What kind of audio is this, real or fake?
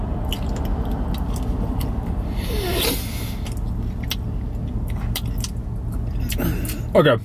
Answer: real